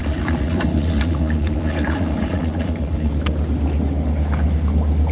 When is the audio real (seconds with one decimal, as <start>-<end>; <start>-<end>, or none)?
3.1-5.1